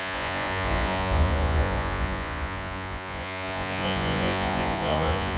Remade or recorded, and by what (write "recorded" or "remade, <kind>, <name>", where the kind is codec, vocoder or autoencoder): remade, vocoder, Vocos